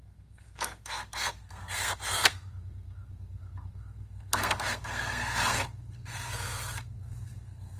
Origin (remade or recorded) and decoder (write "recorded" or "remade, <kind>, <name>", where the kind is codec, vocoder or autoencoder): remade, codec, SNAC